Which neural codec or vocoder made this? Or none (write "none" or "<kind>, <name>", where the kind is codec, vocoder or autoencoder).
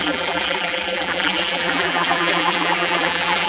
vocoder, BigVGAN v2